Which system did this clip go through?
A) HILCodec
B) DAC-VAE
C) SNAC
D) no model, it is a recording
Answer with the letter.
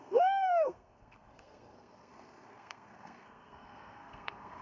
C